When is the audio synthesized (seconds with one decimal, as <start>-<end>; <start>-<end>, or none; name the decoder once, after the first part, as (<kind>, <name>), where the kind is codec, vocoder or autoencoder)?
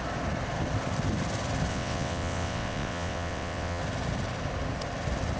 1.7-3.8 (vocoder, WaveNeXt)